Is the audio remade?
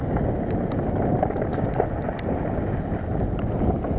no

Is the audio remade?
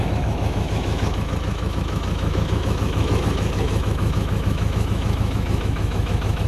yes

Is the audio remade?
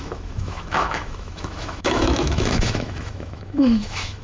yes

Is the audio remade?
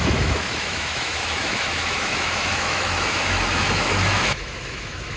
yes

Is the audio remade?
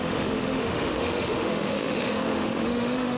yes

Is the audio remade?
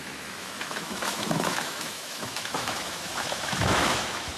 yes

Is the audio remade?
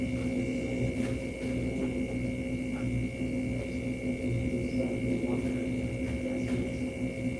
no